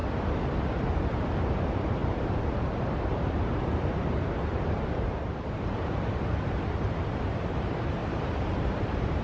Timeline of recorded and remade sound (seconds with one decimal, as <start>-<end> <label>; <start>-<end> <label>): 0.0-1.4 recorded; 1.4-9.2 remade